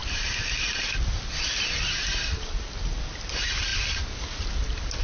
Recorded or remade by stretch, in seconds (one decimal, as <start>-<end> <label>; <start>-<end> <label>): 0.0-5.0 recorded